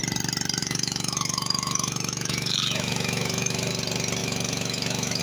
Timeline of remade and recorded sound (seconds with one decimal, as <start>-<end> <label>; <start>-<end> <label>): 0.0-0.6 recorded; 0.6-3.7 remade; 3.7-4.2 recorded; 4.2-5.2 remade